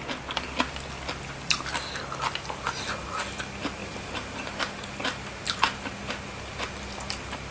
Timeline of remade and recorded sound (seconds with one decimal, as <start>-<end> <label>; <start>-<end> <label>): 0.0-3.8 recorded; 3.8-4.6 remade; 4.6-7.5 recorded